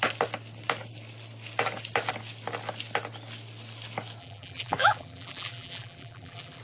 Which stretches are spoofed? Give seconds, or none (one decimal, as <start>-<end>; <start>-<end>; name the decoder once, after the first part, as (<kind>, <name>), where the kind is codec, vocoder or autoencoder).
4.2-6.6 (vocoder, BigVGAN v2)